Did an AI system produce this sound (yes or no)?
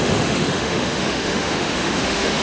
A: yes